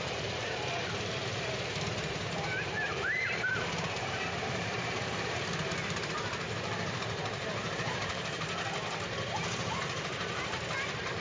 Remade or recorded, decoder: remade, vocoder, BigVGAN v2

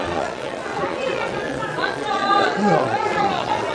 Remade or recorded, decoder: remade, vocoder, Vocos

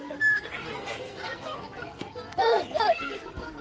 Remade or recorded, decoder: remade, codec, SNAC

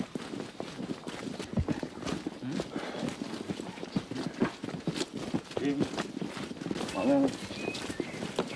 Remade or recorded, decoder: recorded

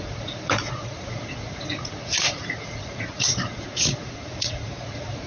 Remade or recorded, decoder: remade, vocoder, Vocos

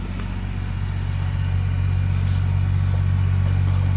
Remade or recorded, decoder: recorded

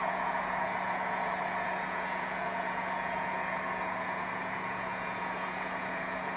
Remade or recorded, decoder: remade, vocoder, Vocos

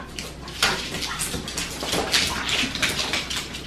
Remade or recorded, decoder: recorded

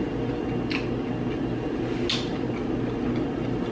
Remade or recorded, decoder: recorded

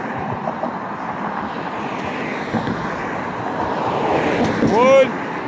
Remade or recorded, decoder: recorded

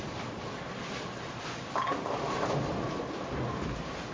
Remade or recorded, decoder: recorded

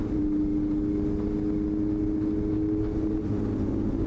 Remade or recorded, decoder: recorded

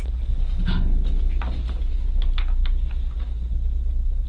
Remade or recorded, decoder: recorded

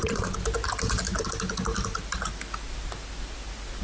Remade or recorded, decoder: recorded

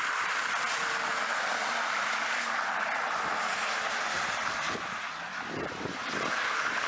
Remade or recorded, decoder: remade, vocoder, BigVGAN v2